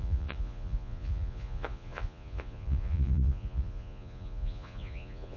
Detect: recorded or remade remade